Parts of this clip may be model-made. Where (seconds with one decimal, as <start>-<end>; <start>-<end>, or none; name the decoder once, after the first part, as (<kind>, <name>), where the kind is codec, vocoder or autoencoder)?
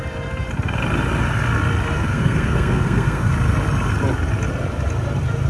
1.9-3.3 (codec, SNAC)